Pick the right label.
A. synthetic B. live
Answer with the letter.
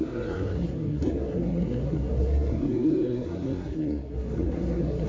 A